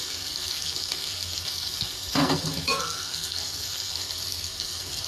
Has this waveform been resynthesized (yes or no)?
yes